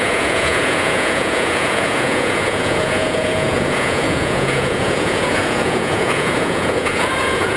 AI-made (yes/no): yes